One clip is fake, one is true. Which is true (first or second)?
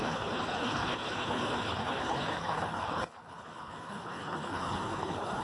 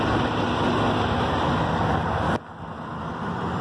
second